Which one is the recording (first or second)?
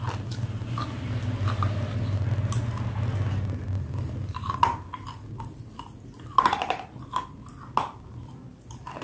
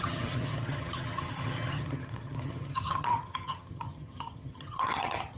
first